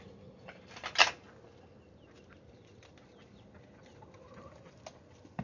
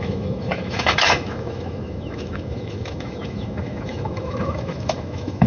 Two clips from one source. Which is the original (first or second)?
first